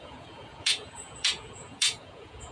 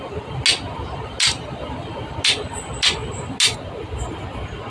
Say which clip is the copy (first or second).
first